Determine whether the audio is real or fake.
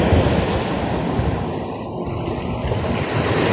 real